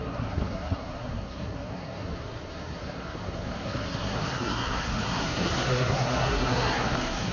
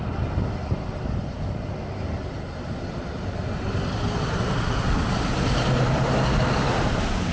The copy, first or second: first